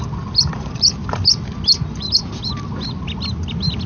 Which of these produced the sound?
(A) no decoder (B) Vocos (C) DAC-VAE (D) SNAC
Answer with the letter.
A